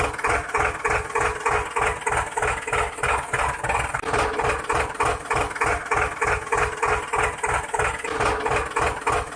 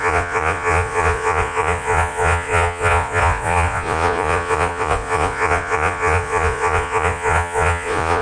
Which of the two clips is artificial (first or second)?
second